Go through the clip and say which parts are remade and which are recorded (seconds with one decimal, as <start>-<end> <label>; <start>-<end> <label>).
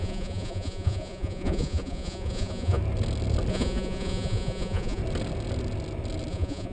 0.0-2.8 remade; 2.8-3.5 recorded; 3.5-5.0 remade; 5.0-6.3 recorded; 6.3-6.7 remade